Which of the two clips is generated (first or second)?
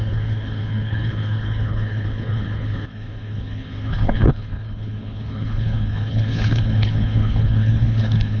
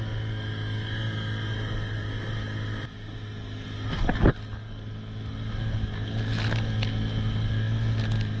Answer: first